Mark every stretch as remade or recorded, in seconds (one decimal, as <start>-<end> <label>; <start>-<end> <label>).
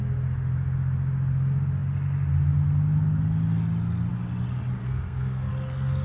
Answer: 0.0-4.8 recorded; 4.8-5.5 remade; 5.5-6.0 recorded